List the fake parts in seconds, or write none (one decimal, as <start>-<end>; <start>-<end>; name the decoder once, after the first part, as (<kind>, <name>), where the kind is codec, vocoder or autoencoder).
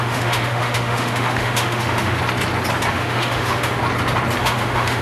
0.0-2.2 (autoencoder, DAC-VAE); 2.9-3.8; 4.4-5.0